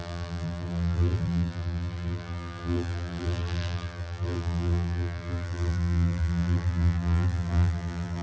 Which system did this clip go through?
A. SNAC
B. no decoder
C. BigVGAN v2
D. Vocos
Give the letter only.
C